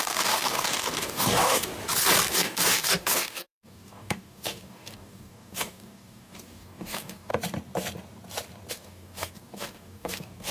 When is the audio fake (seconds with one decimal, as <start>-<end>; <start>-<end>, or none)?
0.0-1.7; 2.3-7.3; 8.7-10.5